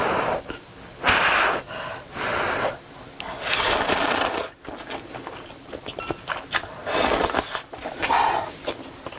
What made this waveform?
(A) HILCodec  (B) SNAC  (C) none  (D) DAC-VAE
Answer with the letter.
C